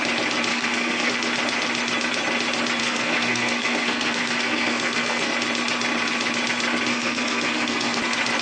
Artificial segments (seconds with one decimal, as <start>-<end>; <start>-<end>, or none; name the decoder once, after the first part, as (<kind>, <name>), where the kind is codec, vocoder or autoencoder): 0.5-1.1 (codec, SNAC); 2.8-5.3; 6.9-8.0